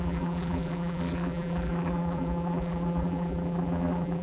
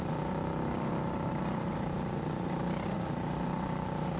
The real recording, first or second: second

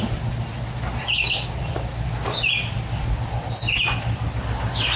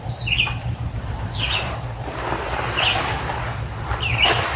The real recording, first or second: first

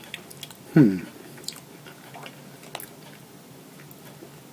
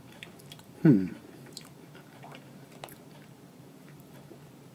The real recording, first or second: first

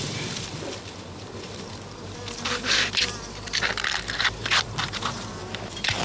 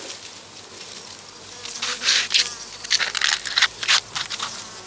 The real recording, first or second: second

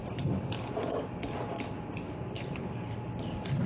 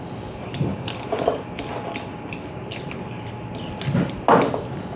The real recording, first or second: second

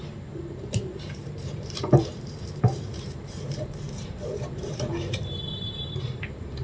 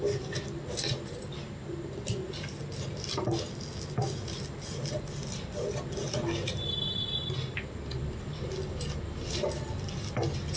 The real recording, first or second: second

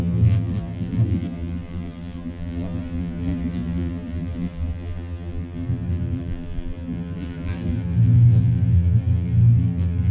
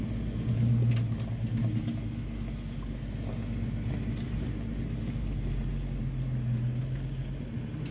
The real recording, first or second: second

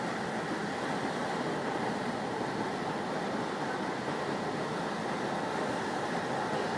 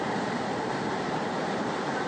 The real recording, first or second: first